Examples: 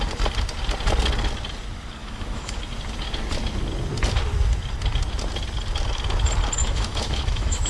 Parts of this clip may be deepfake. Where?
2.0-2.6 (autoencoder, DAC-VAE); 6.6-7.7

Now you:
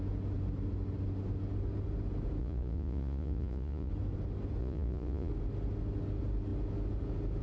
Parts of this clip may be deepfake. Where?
2.4-3.9 (vocoder, Vocos); 4.6-5.3

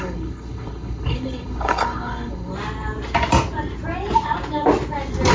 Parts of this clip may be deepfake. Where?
0.0-2.5 (codec, HILCodec)